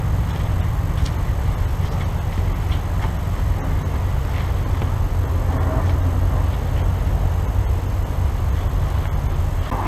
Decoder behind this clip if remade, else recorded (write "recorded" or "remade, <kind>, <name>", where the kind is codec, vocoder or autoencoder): recorded